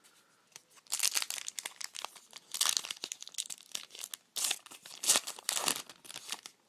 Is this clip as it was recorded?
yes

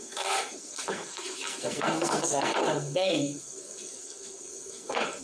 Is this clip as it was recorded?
no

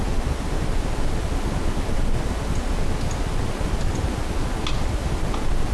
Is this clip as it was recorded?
yes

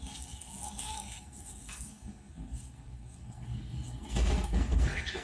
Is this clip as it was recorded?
no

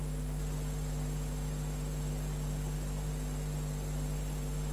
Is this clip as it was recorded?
yes